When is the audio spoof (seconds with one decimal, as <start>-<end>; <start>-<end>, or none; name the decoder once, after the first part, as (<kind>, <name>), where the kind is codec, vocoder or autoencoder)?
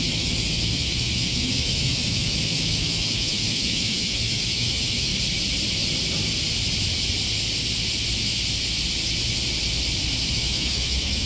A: 0.0-5.1 (autoencoder, DAC-VAE); 10.3-11.3